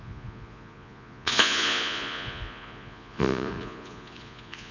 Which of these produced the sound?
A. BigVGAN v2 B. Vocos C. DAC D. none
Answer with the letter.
B